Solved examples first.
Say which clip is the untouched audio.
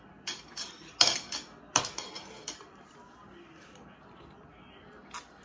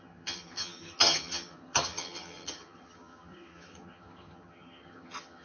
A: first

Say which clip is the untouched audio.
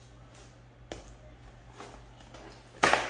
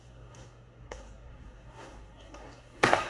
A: first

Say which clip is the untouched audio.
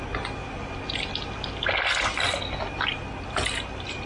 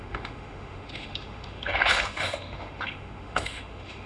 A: first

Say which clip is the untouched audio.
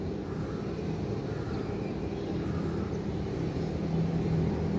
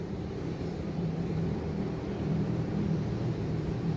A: first